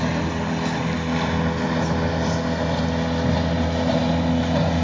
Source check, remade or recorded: recorded